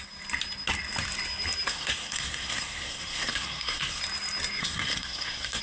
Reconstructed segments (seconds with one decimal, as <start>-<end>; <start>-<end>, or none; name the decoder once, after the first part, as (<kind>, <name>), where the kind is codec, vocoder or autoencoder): 1.7-4.0 (codec, SNAC); 4.6-5.6